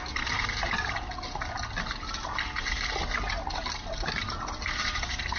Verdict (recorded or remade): recorded